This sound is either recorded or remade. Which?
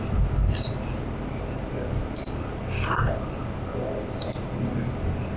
recorded